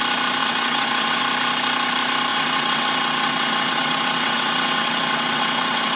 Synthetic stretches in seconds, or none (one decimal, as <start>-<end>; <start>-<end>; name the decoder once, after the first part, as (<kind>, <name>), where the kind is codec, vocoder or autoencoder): 0.4-1.2 (vocoder, WaveNeXt); 2.3-6.0